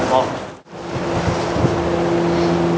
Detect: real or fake real